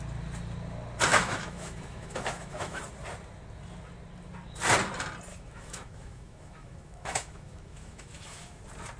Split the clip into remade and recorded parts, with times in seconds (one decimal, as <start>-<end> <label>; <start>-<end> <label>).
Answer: 0.0-1.1 recorded; 1.1-2.8 remade; 2.8-5.3 recorded; 5.3-8.6 remade; 8.6-9.0 recorded